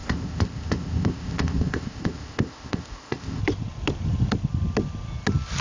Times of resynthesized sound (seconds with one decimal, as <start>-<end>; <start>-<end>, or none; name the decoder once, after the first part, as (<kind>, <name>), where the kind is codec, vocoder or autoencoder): 0.0-3.4 (codec, ZipCodec)

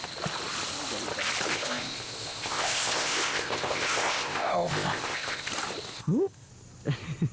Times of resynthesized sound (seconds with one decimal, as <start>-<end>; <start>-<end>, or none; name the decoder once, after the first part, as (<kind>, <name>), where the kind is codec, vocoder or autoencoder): 1.5-5.5 (codec, ZipCodec); 5.9-6.5